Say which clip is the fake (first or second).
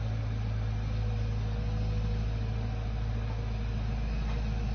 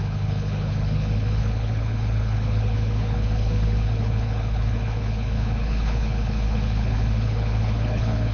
second